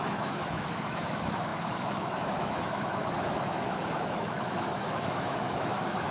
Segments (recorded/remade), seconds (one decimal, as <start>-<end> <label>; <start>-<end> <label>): 0.0-6.1 remade